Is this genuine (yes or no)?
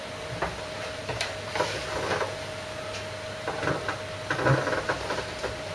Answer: yes